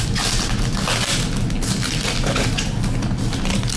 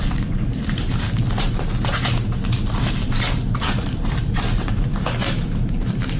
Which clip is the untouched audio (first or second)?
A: first